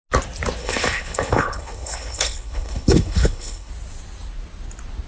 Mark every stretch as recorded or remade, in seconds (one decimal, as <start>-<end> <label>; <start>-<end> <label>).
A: 0.0-0.6 recorded; 0.6-3.7 remade; 3.7-5.1 recorded